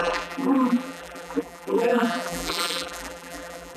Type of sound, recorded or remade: remade